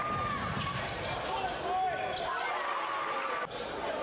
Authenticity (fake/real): real